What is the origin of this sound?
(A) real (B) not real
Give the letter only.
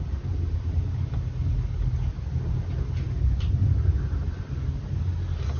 A